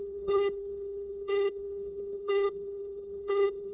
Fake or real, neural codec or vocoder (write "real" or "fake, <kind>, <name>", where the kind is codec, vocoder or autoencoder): fake, codec, HILCodec